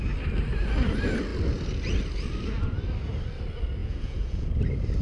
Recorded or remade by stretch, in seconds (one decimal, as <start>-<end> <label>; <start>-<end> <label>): 0.0-3.8 recorded; 3.8-4.6 remade; 4.6-5.0 recorded